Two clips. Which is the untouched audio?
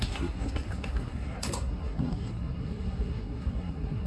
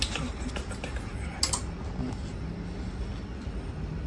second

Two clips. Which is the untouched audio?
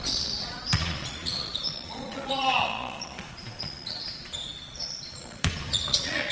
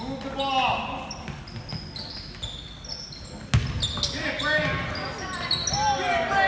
second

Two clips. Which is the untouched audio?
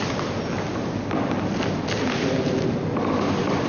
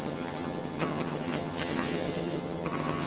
first